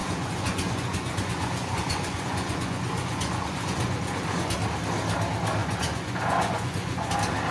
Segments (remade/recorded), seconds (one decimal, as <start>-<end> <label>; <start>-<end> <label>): 0.0-4.5 remade; 4.5-5.6 recorded; 5.6-7.1 remade; 7.1-7.5 recorded